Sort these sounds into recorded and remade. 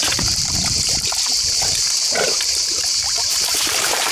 remade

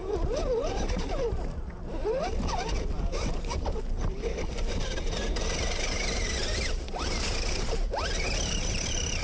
remade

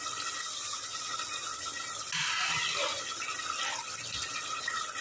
recorded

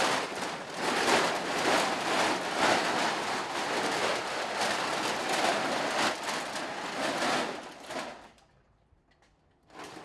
recorded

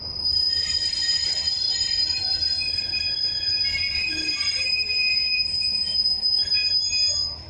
remade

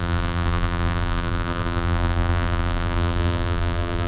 remade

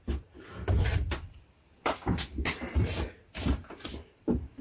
recorded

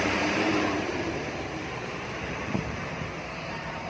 remade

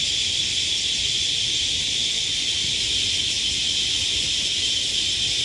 recorded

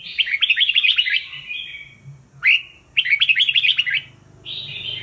recorded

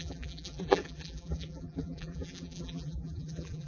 remade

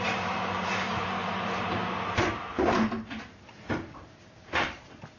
remade